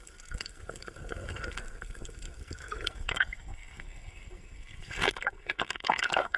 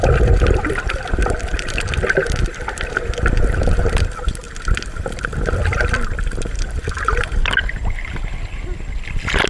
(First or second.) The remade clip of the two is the first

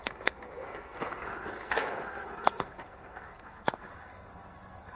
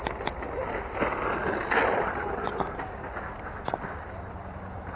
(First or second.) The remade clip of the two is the first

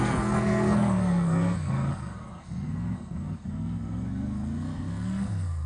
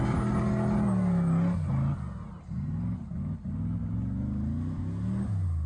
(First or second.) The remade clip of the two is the first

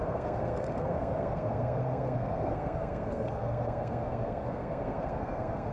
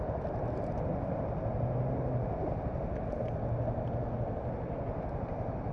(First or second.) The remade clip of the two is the first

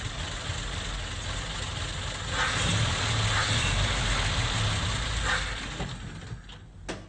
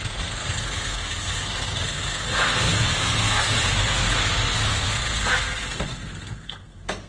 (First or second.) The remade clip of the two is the second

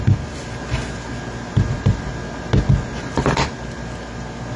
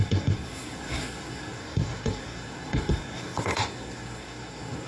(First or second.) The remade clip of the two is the second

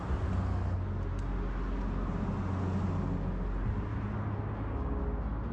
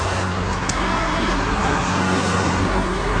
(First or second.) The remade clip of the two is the second